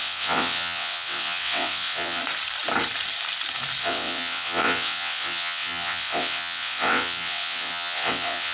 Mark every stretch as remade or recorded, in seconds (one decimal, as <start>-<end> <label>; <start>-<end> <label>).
0.0-2.2 remade; 2.2-3.8 recorded; 3.8-8.5 remade